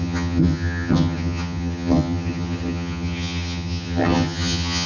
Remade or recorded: remade